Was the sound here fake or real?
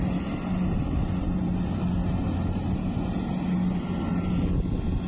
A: real